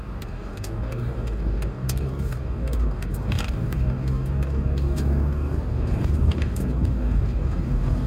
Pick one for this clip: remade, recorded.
remade